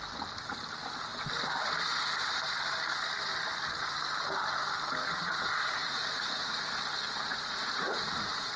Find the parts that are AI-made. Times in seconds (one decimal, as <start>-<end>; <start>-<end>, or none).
5.0-6.6; 7.3-8.6